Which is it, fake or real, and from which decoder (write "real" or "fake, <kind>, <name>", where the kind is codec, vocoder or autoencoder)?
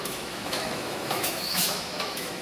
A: fake, autoencoder, DAC-VAE